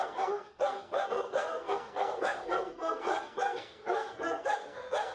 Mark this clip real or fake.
fake